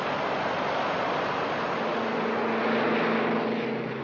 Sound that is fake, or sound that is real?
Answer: real